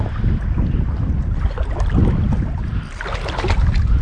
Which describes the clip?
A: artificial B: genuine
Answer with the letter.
B